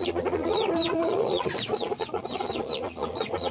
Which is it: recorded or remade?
remade